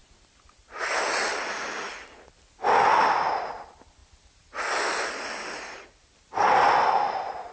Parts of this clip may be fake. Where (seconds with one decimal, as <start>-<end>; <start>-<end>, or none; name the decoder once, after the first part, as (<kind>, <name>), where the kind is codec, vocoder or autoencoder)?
3.3-4.0 (vocoder, BigVGAN v2); 4.9-7.5